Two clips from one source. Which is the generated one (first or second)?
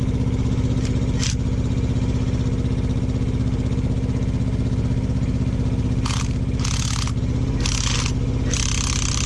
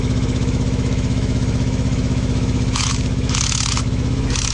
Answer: second